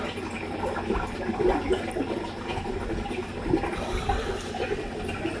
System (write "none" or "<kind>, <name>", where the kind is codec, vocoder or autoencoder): none